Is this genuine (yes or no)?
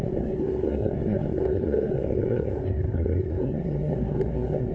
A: no